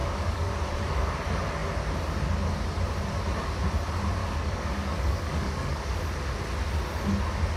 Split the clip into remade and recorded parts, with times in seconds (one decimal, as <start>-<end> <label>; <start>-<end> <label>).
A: 0.0-0.5 remade; 0.5-4.2 recorded; 4.2-6.0 remade; 6.0-7.6 recorded